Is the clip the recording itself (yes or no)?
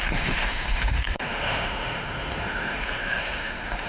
no